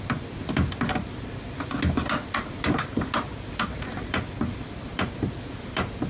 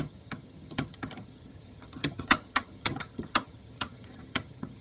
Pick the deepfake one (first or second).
second